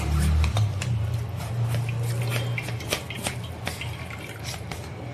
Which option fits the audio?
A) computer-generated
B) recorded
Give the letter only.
B